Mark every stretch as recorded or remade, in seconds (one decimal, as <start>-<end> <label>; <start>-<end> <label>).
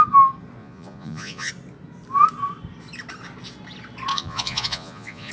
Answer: 0.0-0.6 recorded; 0.6-1.5 remade; 1.5-4.1 recorded; 4.1-5.3 remade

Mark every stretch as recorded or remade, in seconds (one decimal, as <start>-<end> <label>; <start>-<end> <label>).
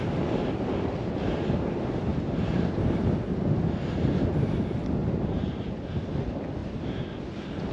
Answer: 0.0-2.1 recorded; 2.1-3.0 remade; 3.0-5.0 recorded; 5.0-5.7 remade; 5.7-6.6 recorded; 6.6-7.2 remade; 7.2-7.7 recorded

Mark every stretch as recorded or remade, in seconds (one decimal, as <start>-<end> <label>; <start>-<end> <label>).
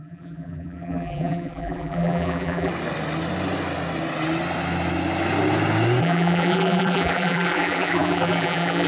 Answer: 0.0-2.7 remade; 2.7-6.0 recorded; 6.0-8.9 remade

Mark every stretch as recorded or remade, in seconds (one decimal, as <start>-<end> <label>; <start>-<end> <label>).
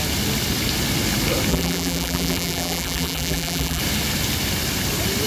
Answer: 0.0-1.5 recorded; 1.5-3.8 remade; 3.8-5.3 recorded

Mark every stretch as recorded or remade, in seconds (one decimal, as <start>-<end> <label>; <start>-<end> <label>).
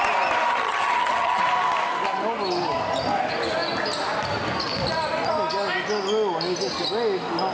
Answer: 0.0-0.5 recorded; 0.5-1.4 remade; 1.4-7.5 recorded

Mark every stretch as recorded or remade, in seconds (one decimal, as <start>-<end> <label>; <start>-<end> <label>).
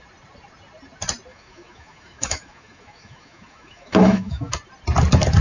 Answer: 0.0-1.3 recorded; 1.3-4.5 remade; 4.5-5.4 recorded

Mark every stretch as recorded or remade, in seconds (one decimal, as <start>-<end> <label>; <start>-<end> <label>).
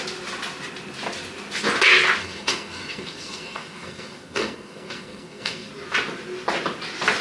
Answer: 0.0-2.2 recorded; 2.2-5.7 remade; 5.7-7.2 recorded